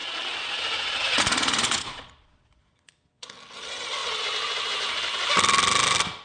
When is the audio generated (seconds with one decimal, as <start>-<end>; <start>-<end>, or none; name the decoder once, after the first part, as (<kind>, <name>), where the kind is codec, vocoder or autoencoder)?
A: 0.0-3.3 (vocoder, Vocos)